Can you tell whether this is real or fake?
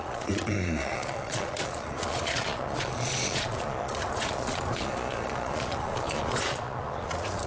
fake